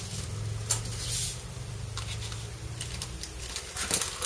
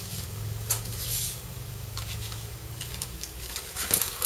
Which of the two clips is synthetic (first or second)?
second